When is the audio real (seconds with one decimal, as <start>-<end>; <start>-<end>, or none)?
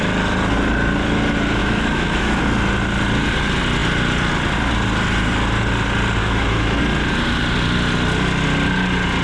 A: 0.0-1.6; 2.4-6.2; 6.8-9.2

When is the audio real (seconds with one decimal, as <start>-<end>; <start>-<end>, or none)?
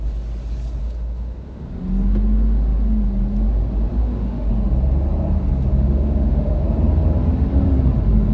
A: 0.0-0.8; 1.7-4.0; 4.5-5.7; 6.6-8.3